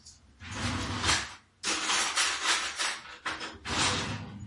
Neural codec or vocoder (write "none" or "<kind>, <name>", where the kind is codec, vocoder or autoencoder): none